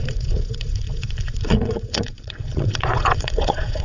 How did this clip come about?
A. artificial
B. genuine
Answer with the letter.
A